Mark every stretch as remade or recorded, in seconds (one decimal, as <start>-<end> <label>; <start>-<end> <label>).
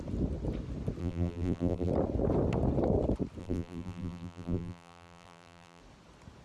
0.0-1.0 recorded; 1.0-1.9 remade; 1.9-3.4 recorded; 3.4-5.8 remade; 5.8-6.4 recorded